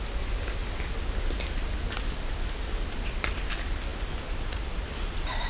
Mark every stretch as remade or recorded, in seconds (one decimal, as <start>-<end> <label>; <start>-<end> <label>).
0.0-0.6 remade; 0.6-1.9 recorded; 1.9-5.5 remade